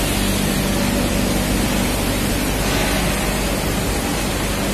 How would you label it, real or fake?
real